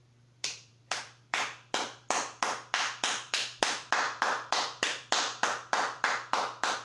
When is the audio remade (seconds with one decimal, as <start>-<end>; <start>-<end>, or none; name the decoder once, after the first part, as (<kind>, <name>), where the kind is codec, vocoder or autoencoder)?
0.0-6.8 (vocoder, BigVGAN v2)